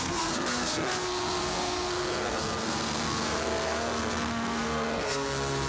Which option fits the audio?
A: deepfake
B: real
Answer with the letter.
A